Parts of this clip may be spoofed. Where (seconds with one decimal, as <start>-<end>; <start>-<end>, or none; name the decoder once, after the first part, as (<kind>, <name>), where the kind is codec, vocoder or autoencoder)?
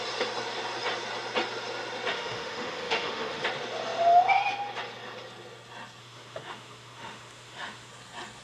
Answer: 2.1-3.4 (autoencoder, DAC-VAE); 6.0-7.9